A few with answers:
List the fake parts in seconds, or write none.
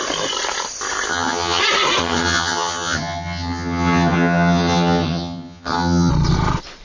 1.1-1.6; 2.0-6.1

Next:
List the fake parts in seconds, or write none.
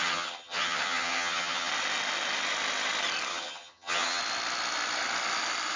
0.0-1.7; 3.3-4.2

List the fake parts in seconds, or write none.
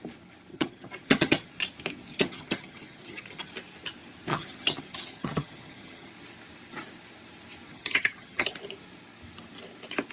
0.5-1.5; 2.1-3.5; 4.3-6.1; 7.7-8.5